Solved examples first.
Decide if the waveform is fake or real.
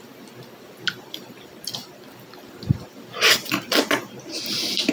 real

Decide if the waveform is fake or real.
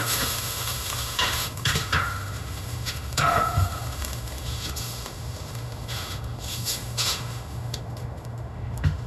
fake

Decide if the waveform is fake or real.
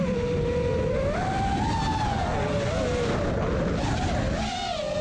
real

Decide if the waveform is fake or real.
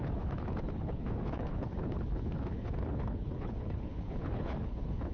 fake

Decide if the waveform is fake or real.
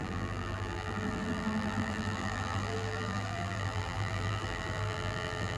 fake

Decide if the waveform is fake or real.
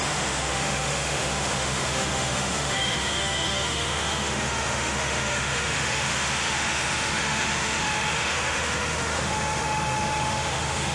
fake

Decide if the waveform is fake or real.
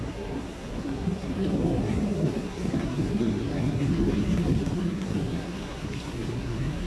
fake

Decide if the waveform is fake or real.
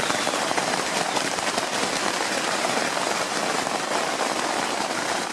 fake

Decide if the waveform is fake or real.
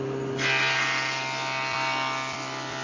real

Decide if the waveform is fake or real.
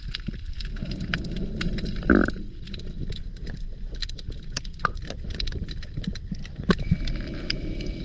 real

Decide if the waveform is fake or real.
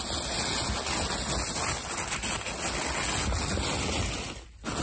real